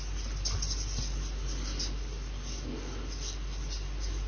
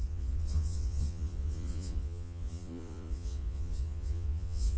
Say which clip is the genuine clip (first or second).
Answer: first